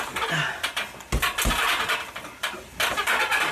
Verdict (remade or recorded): recorded